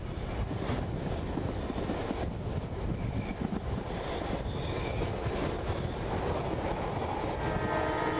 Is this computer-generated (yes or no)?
no